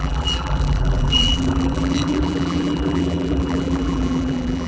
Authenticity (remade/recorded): remade